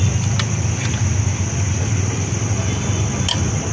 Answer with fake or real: real